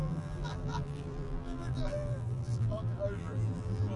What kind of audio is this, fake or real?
fake